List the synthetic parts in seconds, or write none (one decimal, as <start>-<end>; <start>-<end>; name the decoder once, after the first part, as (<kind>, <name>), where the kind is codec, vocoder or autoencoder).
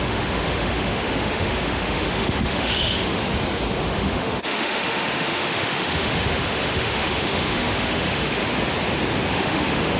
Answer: 0.0-3.2 (autoencoder, DAC-VAE); 3.8-8.4; 9.3-10.0